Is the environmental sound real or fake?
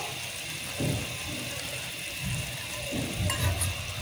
real